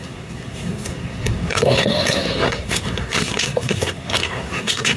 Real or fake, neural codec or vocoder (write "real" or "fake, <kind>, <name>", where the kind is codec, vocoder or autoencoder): fake, codec, SNAC